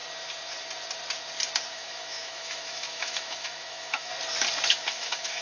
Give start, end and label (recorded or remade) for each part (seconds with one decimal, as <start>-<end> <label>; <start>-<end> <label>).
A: 0.0-1.7 recorded; 1.7-4.1 remade; 4.1-4.7 recorded; 4.7-5.4 remade